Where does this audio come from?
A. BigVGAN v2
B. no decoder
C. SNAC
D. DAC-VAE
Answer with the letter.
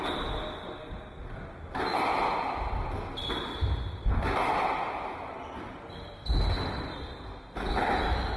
B